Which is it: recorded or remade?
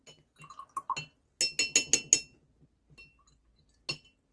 recorded